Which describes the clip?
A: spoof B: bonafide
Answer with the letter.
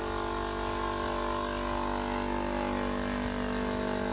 B